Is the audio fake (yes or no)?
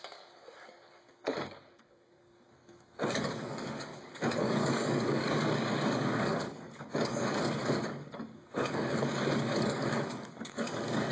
yes